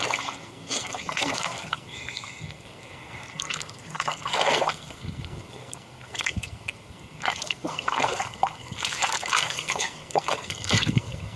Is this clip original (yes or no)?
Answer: no